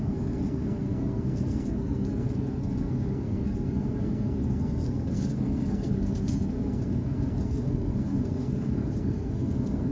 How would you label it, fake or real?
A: fake